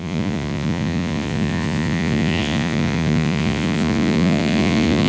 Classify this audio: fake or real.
fake